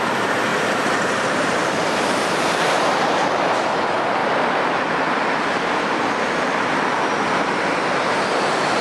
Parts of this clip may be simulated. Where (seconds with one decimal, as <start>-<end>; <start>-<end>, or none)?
0.5-3.1